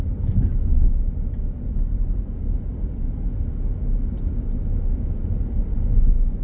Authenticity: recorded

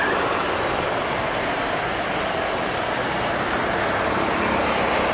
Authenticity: recorded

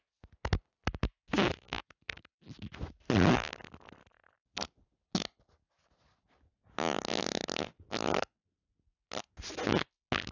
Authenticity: recorded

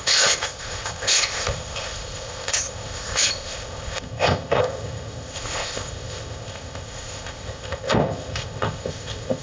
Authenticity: remade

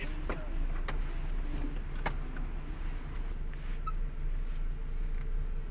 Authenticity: recorded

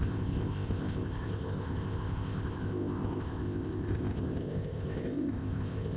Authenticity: remade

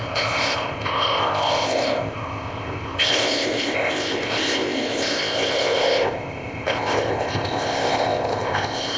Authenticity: remade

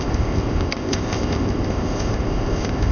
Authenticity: remade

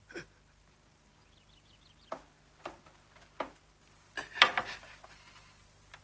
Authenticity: recorded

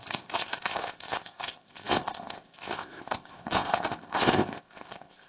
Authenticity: remade